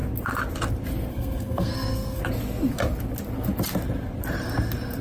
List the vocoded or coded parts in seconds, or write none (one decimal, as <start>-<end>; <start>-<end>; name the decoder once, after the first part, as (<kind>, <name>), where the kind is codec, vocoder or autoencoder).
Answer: 1.1-2.2 (codec, SNAC)

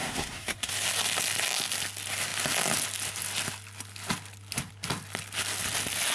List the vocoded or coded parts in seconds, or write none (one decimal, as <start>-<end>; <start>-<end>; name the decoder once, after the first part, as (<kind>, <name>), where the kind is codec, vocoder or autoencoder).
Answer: 0.0-0.7 (codec, SNAC)

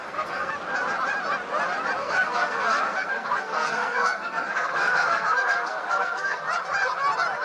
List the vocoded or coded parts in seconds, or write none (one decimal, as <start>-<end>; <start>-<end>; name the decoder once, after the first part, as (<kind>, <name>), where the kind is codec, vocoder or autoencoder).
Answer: 0.0-0.5 (codec, SNAC); 2.0-6.4

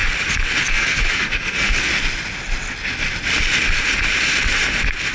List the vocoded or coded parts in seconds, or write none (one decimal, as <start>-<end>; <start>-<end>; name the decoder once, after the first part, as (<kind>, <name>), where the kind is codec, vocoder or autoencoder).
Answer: 0.7-1.9 (codec, SNAC)